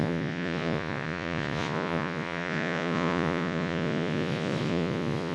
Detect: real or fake fake